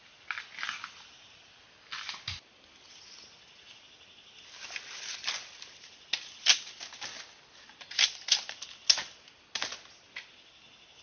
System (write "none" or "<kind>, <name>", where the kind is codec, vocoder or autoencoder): none